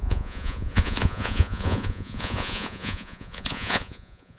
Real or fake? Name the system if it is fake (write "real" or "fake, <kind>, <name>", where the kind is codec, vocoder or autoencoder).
fake, vocoder, Vocos